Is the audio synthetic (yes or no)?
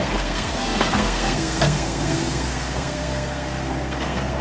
yes